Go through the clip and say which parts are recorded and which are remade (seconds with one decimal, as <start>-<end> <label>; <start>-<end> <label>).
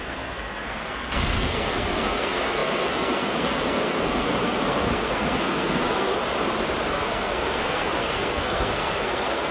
0.0-6.2 remade; 6.2-6.9 recorded; 6.9-9.5 remade